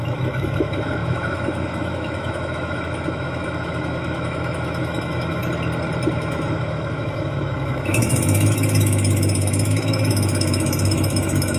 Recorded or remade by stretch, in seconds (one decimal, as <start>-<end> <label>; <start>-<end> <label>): 0.0-5.4 remade; 5.4-6.1 recorded; 6.1-11.6 remade